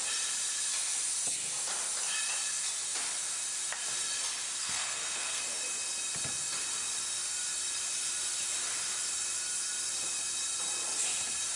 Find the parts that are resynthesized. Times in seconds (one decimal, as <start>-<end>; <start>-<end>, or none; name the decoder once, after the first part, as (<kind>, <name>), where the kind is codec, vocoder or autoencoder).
4.6-5.4 (codec, SNAC)